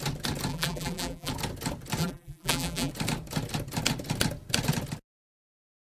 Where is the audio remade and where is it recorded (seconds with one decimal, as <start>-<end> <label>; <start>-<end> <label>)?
0.0-0.5 recorded; 0.5-1.3 remade; 1.3-2.0 recorded; 2.0-2.9 remade; 2.9-5.8 recorded